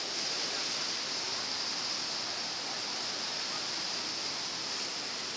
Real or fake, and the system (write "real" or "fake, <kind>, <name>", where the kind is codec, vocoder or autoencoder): real